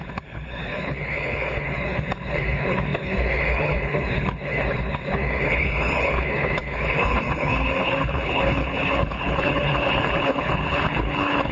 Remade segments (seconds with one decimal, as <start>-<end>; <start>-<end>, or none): 0.0-11.5